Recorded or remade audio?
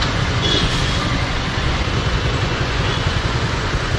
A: remade